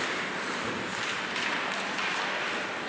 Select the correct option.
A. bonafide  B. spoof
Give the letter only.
A